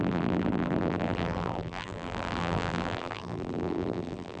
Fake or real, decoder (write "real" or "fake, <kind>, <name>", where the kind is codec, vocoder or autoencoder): fake, vocoder, BigVGAN v2